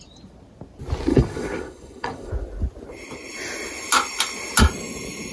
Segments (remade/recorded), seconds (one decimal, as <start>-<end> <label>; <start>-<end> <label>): 0.0-1.1 recorded; 1.1-2.3 remade; 2.3-5.3 recorded